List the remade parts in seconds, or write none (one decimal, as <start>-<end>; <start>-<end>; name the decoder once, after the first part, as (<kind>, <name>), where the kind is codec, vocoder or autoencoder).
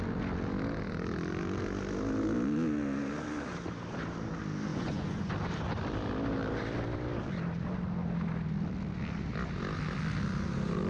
4.7-5.3 (vocoder, Vocos)